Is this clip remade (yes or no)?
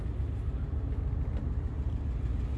no